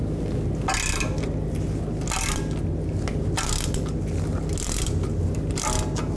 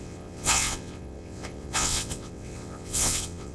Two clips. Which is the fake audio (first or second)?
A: second